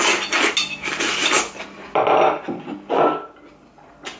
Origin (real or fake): real